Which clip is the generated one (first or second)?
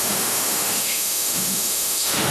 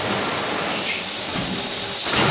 first